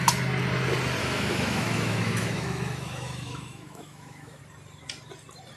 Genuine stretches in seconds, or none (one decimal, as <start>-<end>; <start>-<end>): 0.0-1.0; 4.4-5.6